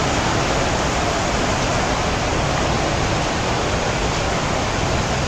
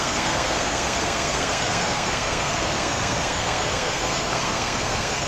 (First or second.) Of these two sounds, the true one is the first